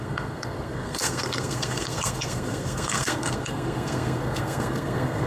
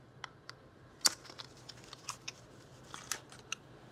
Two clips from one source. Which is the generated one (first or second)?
first